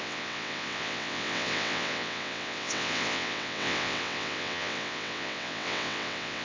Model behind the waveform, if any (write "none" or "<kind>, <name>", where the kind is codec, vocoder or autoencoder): vocoder, WaveNeXt